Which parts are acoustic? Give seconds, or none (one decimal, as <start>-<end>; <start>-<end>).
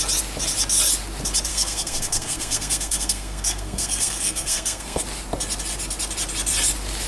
0.0-1.5; 5.0-7.1